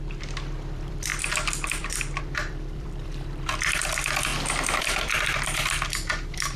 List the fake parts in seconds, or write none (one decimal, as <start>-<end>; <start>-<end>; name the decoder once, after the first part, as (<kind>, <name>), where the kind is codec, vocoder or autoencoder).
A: 0.0-4.3 (vocoder, BigVGAN v2); 4.8-6.6